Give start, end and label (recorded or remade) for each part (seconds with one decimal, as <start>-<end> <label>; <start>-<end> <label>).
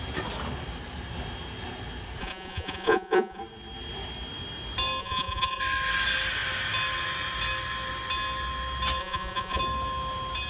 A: 0.0-2.2 recorded; 2.2-3.4 remade; 3.4-5.0 recorded; 5.0-5.6 remade; 5.6-9.0 recorded; 9.0-9.6 remade; 9.6-10.5 recorded